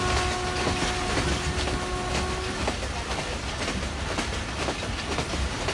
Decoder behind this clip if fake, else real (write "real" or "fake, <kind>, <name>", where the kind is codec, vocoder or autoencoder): real